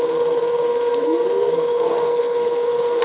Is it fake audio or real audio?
fake